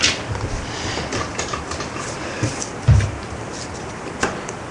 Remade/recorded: recorded